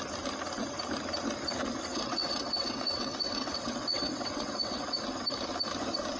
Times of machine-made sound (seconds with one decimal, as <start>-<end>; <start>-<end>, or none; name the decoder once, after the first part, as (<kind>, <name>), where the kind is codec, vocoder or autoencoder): 1.9-5.0 (vocoder, WaveNeXt)